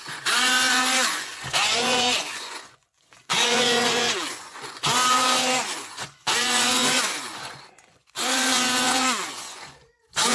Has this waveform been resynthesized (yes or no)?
yes